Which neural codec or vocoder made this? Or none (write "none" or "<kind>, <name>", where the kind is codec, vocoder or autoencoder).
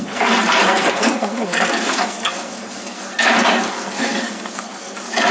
codec, SNAC